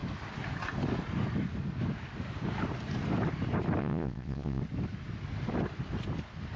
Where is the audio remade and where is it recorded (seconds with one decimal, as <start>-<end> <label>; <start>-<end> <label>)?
0.0-3.8 recorded; 3.8-4.6 remade; 4.6-6.6 recorded